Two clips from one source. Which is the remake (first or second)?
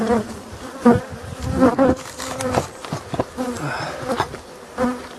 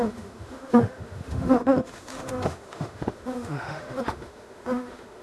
second